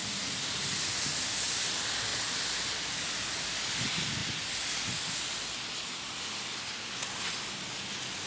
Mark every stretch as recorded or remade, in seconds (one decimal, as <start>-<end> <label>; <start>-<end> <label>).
0.0-8.3 recorded